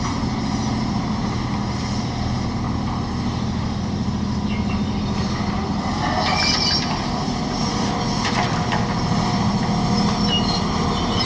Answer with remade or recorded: recorded